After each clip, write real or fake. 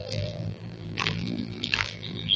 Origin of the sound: fake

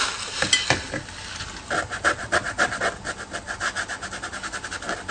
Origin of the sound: real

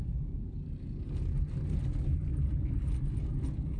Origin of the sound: real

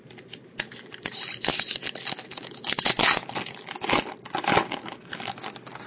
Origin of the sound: real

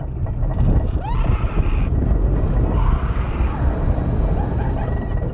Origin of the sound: real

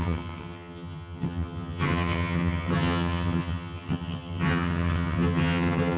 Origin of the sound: fake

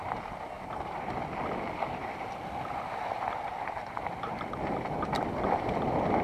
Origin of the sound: real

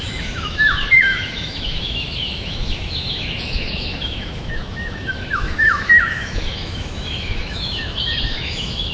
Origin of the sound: fake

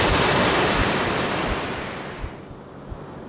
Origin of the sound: fake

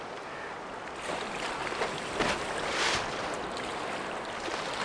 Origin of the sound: real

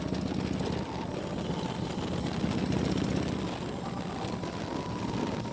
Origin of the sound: real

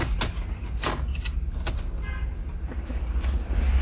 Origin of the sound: real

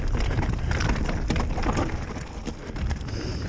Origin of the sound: real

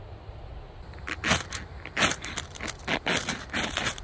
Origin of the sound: real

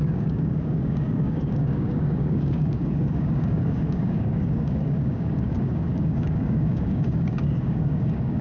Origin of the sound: fake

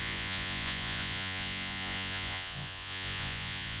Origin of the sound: fake